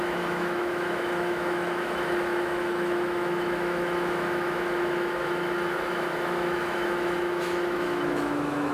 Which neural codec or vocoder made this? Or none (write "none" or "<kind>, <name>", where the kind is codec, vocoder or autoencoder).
autoencoder, DAC-VAE